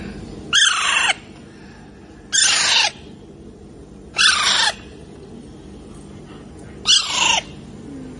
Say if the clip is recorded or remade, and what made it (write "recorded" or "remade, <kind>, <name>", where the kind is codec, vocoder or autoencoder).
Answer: recorded